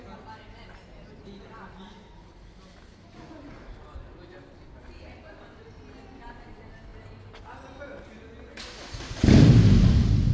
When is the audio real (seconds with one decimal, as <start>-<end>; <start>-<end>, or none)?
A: 0.0-10.3